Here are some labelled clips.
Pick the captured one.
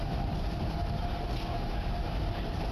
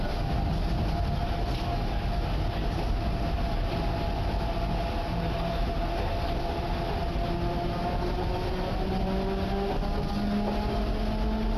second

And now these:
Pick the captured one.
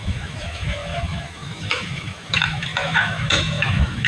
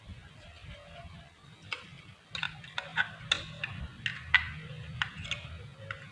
second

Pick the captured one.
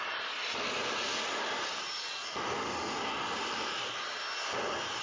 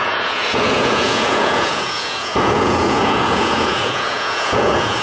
first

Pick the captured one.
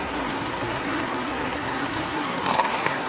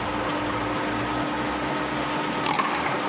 second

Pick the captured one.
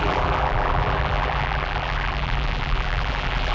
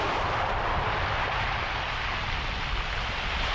second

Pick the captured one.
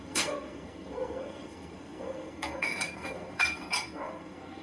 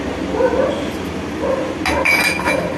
second